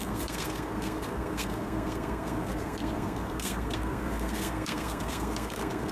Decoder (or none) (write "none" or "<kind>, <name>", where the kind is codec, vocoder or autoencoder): codec, SNAC